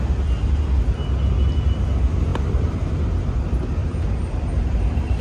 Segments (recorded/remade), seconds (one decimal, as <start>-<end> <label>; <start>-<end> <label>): 0.0-2.3 recorded; 2.3-3.4 remade; 3.4-3.8 recorded; 3.8-5.2 remade